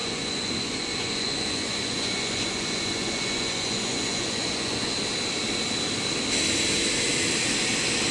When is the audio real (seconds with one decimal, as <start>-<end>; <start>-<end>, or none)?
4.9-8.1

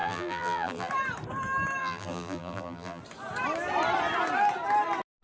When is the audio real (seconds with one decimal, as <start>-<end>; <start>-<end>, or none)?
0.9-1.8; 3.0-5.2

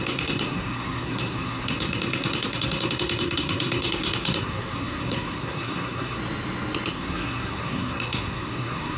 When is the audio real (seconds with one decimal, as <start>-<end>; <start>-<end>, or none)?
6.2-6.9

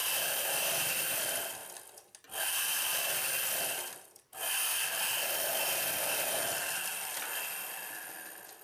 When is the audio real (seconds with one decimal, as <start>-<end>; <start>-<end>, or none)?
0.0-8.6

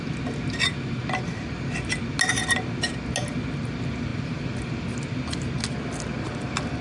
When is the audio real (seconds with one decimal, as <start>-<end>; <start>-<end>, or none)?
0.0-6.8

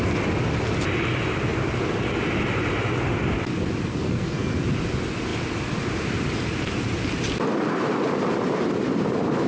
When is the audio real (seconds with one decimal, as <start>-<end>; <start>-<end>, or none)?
0.0-3.9; 4.6-9.5

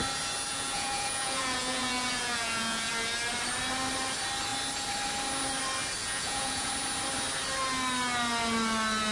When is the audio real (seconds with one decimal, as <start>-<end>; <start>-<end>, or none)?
0.0-0.5; 2.9-6.0; 6.7-9.1